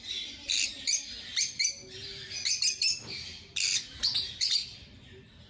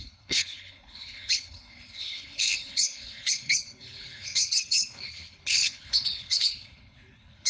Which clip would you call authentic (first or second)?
first